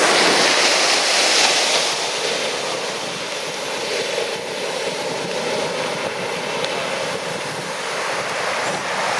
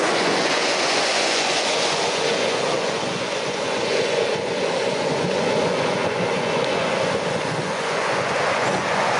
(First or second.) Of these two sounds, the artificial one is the second